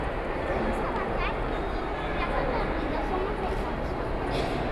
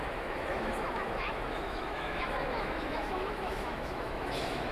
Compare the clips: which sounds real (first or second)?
first